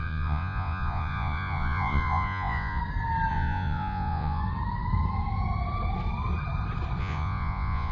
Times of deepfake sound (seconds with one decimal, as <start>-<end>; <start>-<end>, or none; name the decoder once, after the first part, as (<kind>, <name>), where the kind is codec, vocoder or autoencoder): 0.0-2.8 (vocoder, Vocos); 3.3-4.4; 7.0-7.9

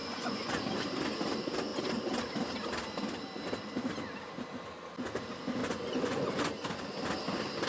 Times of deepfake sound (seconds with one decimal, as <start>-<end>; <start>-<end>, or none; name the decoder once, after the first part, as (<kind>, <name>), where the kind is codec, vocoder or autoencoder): 0.0-0.6 (vocoder, Vocos); 5.6-6.3

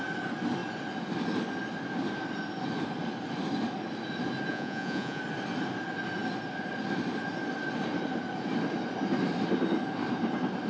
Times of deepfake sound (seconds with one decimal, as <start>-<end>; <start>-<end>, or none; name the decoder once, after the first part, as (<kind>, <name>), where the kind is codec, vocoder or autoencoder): 4.5-5.2 (vocoder, Vocos)

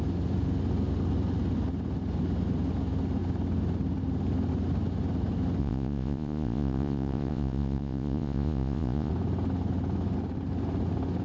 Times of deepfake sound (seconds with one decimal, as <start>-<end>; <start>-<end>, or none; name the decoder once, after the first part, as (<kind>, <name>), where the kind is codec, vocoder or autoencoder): 5.6-9.1 (vocoder, Vocos)